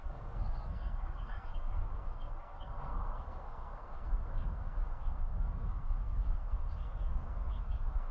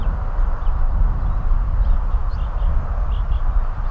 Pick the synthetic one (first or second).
first